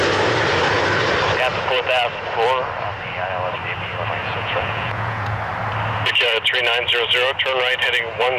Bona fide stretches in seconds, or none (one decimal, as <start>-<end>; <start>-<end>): 0.0-4.2; 5.4-8.4